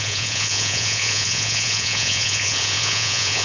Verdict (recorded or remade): remade